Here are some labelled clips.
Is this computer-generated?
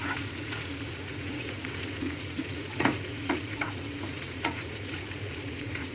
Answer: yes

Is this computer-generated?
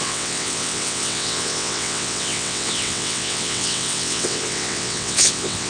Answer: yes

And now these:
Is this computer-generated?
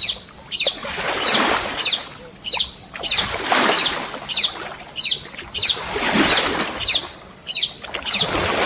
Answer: no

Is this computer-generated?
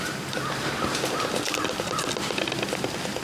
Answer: no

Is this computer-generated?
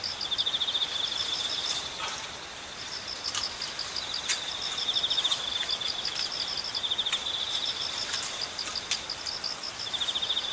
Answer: no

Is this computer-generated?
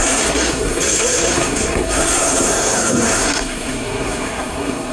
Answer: yes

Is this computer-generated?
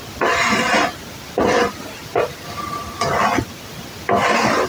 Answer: no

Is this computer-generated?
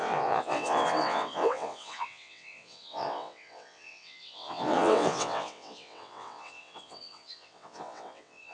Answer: yes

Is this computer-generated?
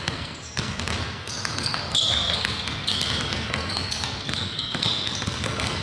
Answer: yes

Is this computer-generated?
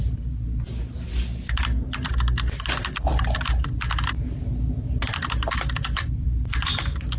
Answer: no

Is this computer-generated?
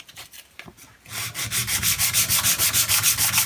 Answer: no